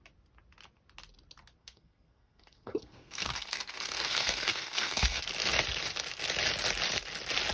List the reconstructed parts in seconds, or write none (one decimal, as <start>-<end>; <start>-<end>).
1.6-5.2